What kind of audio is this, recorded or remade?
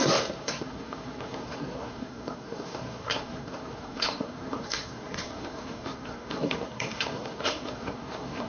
remade